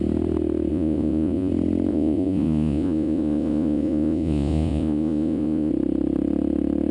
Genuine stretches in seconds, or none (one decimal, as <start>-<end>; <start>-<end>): 0.0-0.7; 1.5-1.9; 5.7-6.9